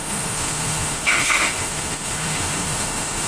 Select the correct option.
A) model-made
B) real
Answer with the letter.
A